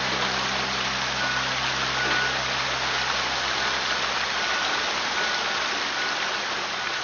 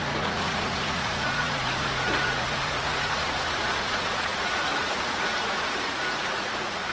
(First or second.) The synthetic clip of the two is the second